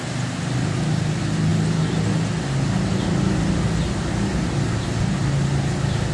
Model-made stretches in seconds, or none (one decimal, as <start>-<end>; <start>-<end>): none